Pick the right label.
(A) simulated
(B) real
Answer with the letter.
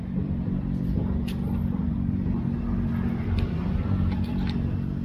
A